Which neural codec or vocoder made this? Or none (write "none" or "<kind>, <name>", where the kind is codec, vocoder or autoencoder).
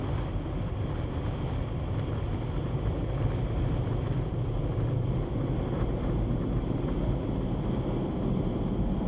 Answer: none